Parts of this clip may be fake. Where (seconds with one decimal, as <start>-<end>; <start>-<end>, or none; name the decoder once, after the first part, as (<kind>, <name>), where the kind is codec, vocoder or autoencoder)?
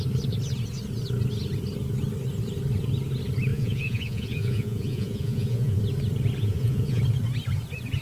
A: 3.5-5.8 (vocoder, Vocos); 6.4-7.0